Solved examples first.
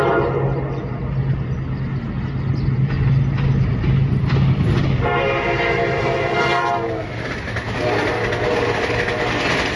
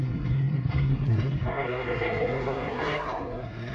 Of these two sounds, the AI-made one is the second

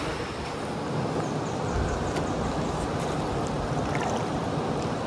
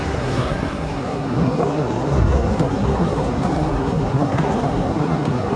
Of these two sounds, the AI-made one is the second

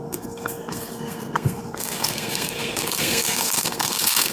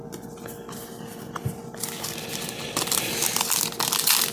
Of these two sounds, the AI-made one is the first